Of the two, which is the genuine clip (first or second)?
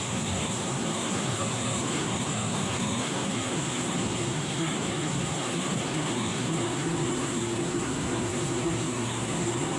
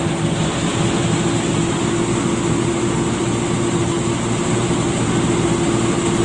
second